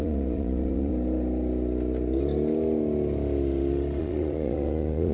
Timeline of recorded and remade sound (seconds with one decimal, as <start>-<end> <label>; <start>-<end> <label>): 0.0-0.9 remade; 0.9-4.0 recorded; 4.0-5.1 remade